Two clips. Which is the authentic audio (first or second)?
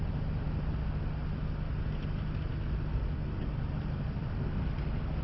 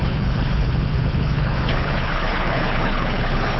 first